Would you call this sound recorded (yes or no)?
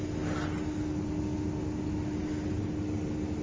yes